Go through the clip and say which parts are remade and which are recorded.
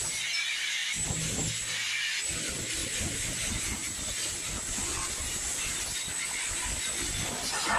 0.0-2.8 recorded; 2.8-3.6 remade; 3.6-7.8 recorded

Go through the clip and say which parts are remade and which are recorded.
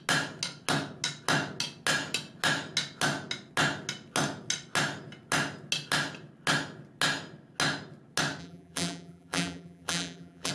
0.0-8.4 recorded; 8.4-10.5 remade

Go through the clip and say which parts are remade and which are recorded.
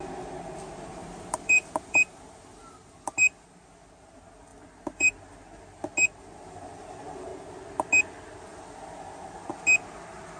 0.0-1.0 recorded; 1.0-2.9 remade; 2.9-4.5 recorded; 4.5-5.1 remade; 5.1-10.4 recorded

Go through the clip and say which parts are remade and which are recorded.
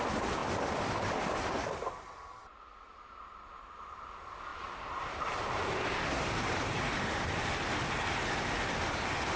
0.0-4.5 recorded; 4.5-8.5 remade; 8.5-9.4 recorded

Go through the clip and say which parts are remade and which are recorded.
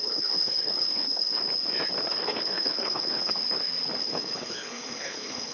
0.0-1.4 remade; 1.4-2.1 recorded; 2.1-3.4 remade; 3.4-4.0 recorded; 4.0-5.5 remade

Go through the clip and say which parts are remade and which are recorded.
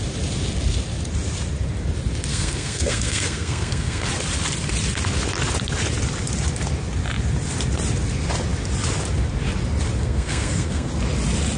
0.0-2.3 recorded; 2.3-4.1 remade; 4.1-10.0 recorded; 10.0-10.9 remade; 10.9-11.6 recorded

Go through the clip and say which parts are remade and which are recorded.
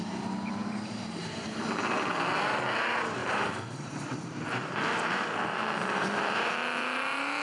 0.0-0.6 recorded; 0.6-1.6 remade; 1.6-3.2 recorded; 3.2-6.5 remade; 6.5-7.4 recorded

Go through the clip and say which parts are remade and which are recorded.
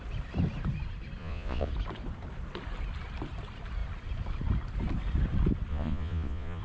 0.0-1.2 recorded; 1.2-1.7 remade; 1.7-5.7 recorded; 5.7-6.6 remade